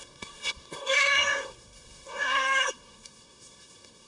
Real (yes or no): no